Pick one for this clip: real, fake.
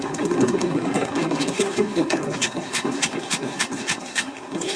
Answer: fake